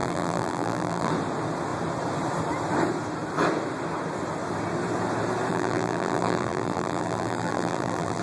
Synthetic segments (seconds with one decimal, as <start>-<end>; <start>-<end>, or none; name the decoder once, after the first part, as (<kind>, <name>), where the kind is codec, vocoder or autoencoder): 0.0-1.1 (vocoder, BigVGAN v2); 5.5-8.2